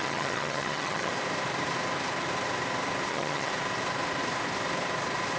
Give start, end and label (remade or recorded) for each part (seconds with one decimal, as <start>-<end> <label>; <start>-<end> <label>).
0.0-1.1 remade; 1.1-3.1 recorded; 3.1-3.5 remade; 3.5-5.4 recorded